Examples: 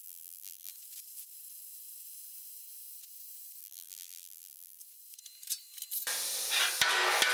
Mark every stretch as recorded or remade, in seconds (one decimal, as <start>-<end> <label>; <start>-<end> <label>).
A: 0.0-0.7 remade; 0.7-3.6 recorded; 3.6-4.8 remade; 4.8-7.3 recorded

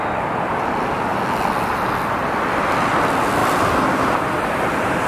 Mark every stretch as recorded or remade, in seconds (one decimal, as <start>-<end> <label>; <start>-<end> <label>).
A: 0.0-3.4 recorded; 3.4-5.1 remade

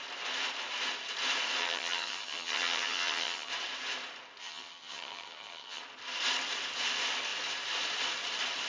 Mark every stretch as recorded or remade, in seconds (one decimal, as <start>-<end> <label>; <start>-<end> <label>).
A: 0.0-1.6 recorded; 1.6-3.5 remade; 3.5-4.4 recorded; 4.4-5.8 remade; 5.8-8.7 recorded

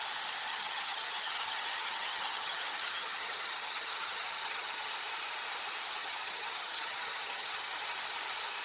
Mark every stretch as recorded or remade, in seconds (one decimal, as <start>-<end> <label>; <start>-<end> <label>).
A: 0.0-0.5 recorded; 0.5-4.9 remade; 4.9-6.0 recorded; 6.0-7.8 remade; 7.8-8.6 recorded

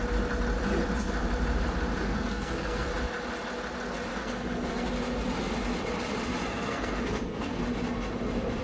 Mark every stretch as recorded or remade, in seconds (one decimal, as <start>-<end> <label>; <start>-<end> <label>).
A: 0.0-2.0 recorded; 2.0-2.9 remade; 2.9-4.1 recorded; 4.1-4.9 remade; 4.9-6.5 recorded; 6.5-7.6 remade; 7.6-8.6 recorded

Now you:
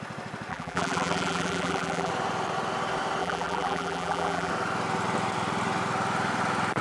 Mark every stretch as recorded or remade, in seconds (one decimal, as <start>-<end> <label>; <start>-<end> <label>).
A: 0.0-0.5 recorded; 0.5-2.1 remade; 2.1-3.2 recorded; 3.2-4.5 remade; 4.5-6.8 recorded